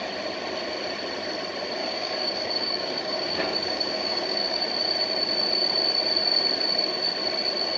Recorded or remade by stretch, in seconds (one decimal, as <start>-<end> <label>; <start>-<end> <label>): 0.0-1.8 recorded; 1.8-4.6 remade; 4.6-7.8 recorded